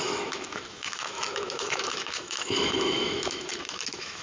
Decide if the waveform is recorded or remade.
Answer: remade